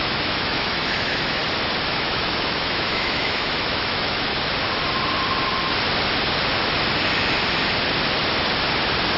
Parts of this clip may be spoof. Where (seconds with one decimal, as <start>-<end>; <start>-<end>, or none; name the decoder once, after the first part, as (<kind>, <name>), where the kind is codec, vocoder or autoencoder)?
0.0-1.4 (autoencoder, DAC-VAE); 1.9-4.3